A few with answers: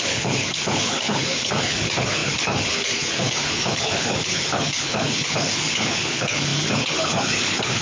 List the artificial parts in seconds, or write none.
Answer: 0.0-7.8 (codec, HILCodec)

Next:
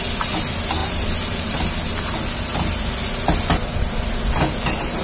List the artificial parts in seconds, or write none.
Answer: none

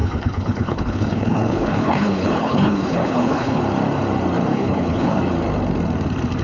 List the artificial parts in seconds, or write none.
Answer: 0.0-3.6 (codec, HILCodec); 4.5-5.2

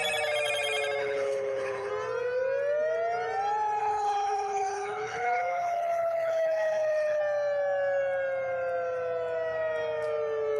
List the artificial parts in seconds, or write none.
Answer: 1.0-1.9 (codec, HILCodec); 3.8-7.2